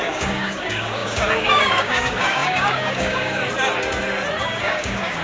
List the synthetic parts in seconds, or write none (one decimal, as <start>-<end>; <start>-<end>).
0.0-3.4; 4.4-5.2